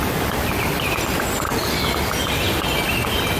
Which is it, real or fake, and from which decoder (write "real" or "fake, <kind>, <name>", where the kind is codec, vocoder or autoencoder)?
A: real